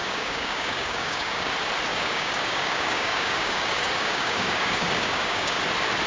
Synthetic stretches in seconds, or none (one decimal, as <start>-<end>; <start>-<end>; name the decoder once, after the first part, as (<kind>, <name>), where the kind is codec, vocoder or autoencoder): 0.0-1.5 (codec, DAC); 1.9-5.6

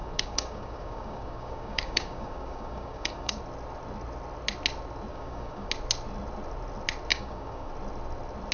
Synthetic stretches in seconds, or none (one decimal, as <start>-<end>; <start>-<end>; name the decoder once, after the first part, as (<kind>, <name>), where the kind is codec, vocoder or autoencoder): 0.0-3.4 (codec, DAC); 5.1-5.7; 7.1-7.7

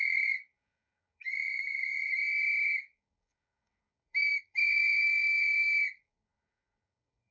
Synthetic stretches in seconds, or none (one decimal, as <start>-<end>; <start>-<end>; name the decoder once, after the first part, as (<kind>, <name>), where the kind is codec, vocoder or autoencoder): 0.0-7.3 (codec, DAC)